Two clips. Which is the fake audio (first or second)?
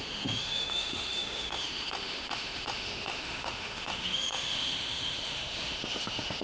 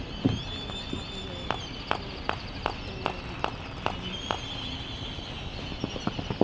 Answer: first